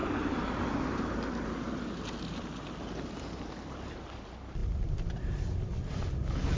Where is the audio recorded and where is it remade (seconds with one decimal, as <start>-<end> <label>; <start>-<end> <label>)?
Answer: 0.0-4.0 recorded; 4.0-6.6 remade